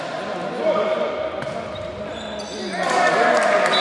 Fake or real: real